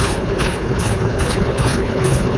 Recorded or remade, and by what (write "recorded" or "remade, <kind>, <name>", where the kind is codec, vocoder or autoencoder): remade, codec, HILCodec